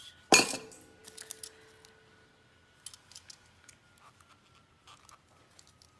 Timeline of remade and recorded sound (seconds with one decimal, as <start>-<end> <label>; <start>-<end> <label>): 0.0-6.0 recorded